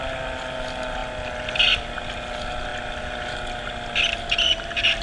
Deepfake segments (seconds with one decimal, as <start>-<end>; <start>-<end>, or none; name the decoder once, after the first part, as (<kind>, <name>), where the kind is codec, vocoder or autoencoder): none